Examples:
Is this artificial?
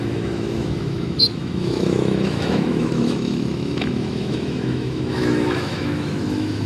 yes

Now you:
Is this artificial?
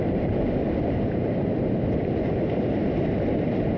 no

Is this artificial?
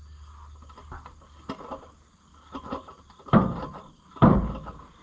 no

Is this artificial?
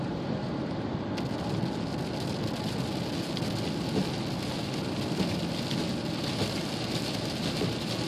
no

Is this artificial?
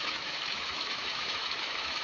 yes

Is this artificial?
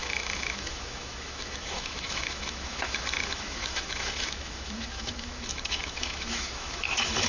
yes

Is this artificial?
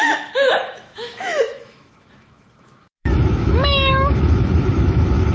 yes